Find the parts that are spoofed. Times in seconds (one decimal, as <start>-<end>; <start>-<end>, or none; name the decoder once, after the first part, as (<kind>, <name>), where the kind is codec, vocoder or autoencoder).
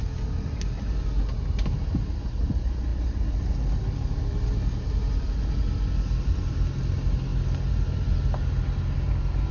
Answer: none